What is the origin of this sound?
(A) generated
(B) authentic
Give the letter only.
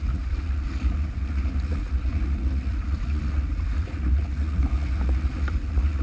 A